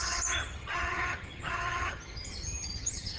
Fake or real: fake